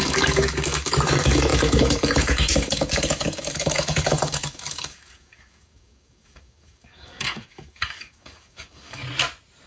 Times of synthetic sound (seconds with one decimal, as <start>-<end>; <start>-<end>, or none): 0.0-9.0